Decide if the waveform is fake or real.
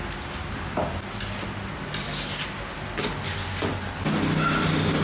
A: real